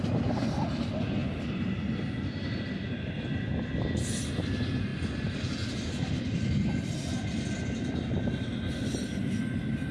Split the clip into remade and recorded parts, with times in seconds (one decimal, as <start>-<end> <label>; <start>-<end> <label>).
0.0-9.9 recorded